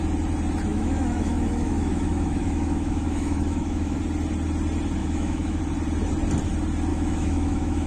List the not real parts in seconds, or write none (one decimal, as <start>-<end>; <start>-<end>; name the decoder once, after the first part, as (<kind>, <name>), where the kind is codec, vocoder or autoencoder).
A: 0.7-4.0 (autoencoder, DAC-VAE); 5.0-5.6; 6.9-7.9